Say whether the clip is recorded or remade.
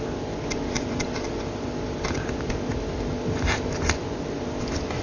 recorded